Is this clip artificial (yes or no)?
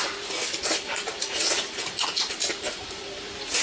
yes